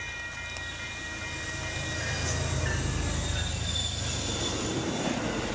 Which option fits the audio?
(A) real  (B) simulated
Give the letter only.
A